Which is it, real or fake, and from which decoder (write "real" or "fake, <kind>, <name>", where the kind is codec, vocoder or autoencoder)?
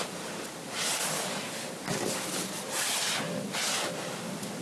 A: real